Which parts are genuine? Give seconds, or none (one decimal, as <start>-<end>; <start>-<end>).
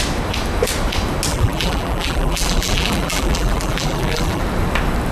0.0-1.3; 4.4-5.1